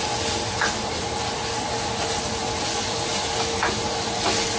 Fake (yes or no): no